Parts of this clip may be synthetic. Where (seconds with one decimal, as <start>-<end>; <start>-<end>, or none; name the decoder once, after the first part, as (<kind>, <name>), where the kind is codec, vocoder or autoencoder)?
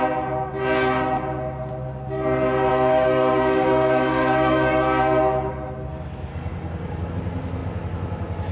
2.7-5.5 (codec, DAC); 6.3-7.1